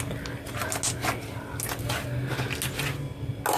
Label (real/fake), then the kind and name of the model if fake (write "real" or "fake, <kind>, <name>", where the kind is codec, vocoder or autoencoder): real